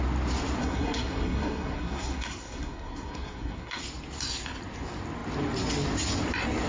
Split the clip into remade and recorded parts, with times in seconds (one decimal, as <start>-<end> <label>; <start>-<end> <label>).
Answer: 0.0-0.6 recorded; 0.6-3.8 remade; 3.8-6.7 recorded